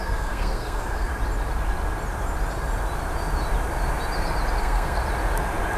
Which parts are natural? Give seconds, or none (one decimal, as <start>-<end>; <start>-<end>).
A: 1.1-4.6; 5.0-5.8